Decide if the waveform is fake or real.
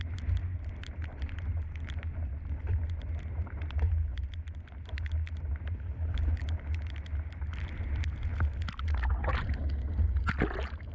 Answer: real